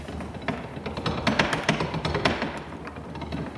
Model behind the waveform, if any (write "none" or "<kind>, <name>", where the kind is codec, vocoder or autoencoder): none